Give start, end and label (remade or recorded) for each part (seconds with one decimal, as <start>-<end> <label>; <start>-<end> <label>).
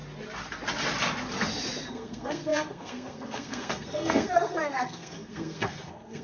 0.0-1.9 recorded; 1.9-6.2 remade